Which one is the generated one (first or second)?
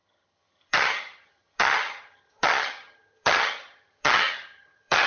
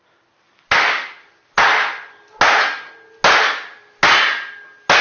first